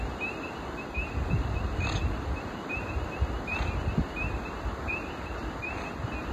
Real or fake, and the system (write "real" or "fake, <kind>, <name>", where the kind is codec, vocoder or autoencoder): real